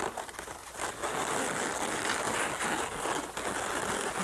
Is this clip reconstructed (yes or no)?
no